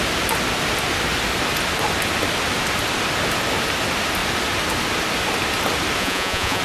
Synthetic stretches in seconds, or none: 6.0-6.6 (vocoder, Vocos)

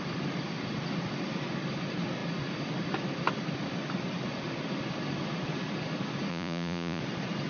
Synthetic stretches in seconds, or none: 6.3-7.0 (vocoder, Vocos)

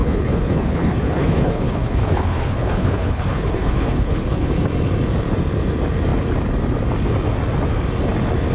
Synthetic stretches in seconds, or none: 0.0-4.5 (codec, HILCodec)

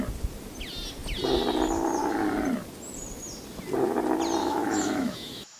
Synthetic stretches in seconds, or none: 4.4-5.6 (autoencoder, DAC-VAE)

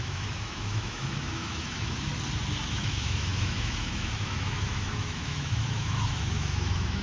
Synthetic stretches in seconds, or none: 0.0-2.1 (autoencoder, DAC-VAE); 2.7-7.0

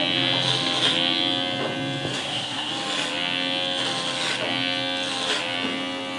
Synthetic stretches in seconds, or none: 2.1-2.7 (codec, SNAC)